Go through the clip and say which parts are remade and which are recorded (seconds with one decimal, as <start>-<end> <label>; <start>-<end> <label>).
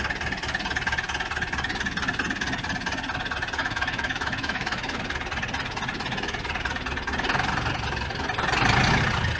0.0-3.6 recorded; 3.6-5.0 remade; 5.0-9.4 recorded